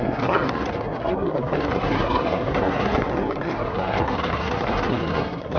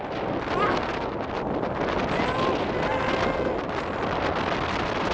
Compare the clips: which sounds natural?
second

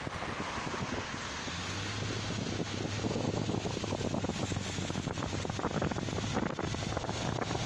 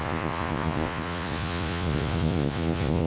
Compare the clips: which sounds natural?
first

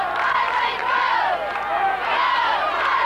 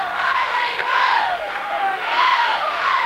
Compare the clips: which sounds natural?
first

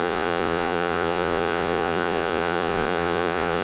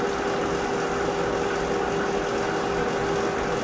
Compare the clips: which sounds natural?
second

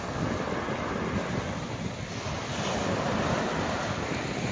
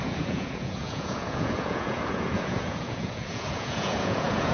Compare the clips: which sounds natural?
first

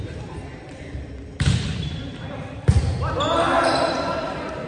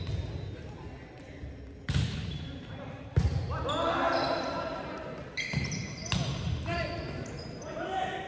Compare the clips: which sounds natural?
second